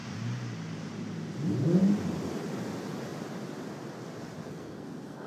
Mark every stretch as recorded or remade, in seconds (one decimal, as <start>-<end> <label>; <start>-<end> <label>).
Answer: 0.0-4.4 recorded; 4.4-5.3 remade